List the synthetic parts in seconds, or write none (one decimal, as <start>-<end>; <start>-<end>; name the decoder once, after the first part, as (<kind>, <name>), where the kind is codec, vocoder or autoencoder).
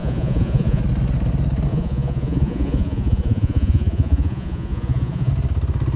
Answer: 0.0-0.8 (vocoder, Vocos); 1.7-5.3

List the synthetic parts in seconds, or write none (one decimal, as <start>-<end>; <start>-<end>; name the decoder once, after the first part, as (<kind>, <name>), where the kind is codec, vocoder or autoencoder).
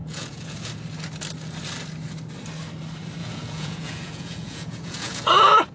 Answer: 0.0-0.7 (vocoder, Vocos); 3.2-5.3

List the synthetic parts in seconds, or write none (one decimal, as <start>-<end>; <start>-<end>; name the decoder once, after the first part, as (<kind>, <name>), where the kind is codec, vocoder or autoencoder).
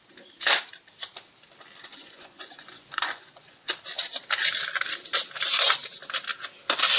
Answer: 1.8-3.7 (vocoder, Vocos)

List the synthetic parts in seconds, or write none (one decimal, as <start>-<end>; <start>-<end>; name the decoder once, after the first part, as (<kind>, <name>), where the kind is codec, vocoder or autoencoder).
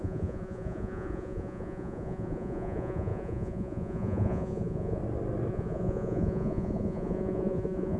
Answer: 0.0-5.0 (vocoder, Vocos); 5.5-8.0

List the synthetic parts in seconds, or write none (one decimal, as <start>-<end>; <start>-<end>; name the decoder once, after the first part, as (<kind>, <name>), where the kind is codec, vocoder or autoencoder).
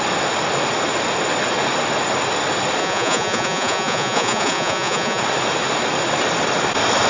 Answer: 2.8-5.2 (vocoder, Vocos)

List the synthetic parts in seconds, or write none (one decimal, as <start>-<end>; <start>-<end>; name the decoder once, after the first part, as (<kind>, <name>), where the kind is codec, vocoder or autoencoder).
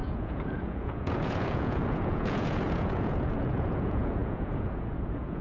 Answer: 0.0-5.4 (vocoder, Vocos)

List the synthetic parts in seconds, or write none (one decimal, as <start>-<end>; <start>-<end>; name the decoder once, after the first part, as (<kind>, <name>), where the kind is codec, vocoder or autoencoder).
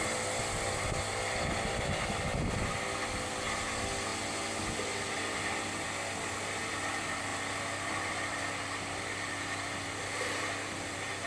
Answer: none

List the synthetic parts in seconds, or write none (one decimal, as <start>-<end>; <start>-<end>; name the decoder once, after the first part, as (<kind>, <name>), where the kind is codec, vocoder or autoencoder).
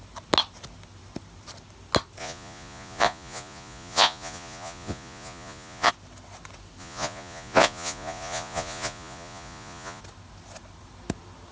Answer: 2.2-5.9 (vocoder, Vocos); 6.8-10.0